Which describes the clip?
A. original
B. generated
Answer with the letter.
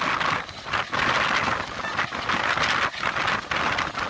A